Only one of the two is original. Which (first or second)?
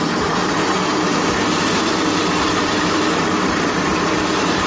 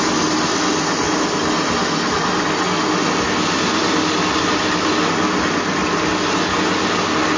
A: second